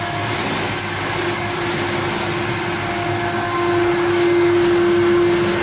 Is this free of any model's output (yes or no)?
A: yes